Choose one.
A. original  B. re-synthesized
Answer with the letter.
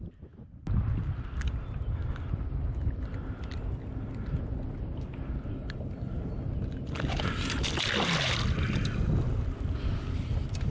A